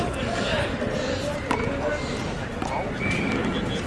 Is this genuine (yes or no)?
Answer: yes